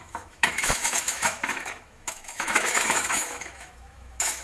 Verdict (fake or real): fake